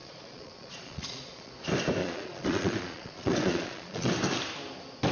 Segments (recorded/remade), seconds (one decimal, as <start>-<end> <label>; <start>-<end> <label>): 0.0-1.5 remade; 1.5-2.0 recorded; 2.0-4.1 remade; 4.1-5.1 recorded